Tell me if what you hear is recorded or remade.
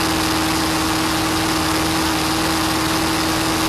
recorded